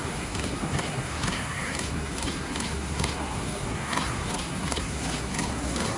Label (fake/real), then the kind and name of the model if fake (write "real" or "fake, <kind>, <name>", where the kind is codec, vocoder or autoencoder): fake, codec, SNAC